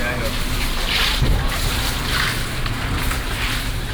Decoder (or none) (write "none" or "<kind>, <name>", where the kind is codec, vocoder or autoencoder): vocoder, BigVGAN v2